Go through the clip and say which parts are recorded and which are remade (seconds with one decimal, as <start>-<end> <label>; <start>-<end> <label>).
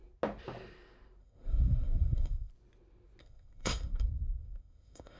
0.0-1.2 recorded; 1.2-2.5 remade; 2.5-3.2 recorded; 3.2-5.2 remade